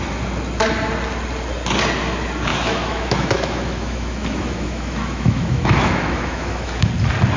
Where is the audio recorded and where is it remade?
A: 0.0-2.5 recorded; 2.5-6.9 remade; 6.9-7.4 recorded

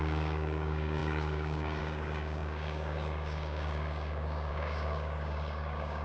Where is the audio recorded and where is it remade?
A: 0.0-6.0 remade

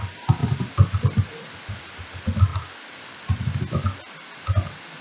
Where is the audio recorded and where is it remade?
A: 0.0-5.0 recorded

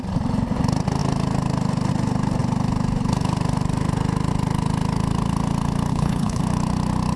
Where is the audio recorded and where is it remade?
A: 0.0-5.9 recorded; 5.9-6.4 remade; 6.4-7.2 recorded

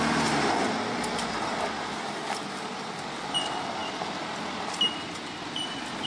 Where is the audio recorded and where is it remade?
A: 0.0-6.1 recorded